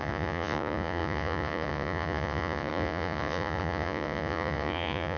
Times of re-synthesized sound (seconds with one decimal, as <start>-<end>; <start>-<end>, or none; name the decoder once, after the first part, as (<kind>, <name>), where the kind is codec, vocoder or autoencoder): 0.0-5.2 (vocoder, Vocos)